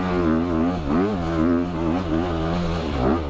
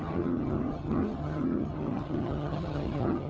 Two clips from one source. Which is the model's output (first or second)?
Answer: second